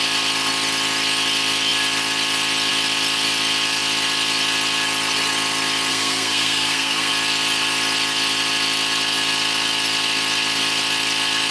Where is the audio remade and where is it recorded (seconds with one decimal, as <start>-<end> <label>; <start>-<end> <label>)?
0.0-5.9 recorded; 5.9-7.1 remade; 7.1-11.5 recorded